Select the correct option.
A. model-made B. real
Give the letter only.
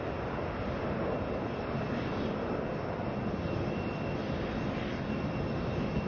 B